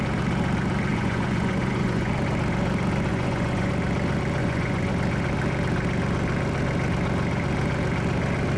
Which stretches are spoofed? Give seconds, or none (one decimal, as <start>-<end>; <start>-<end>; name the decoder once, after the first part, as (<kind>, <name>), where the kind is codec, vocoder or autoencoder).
0.9-2.1 (vocoder, Vocos); 3.1-3.7; 4.4-4.9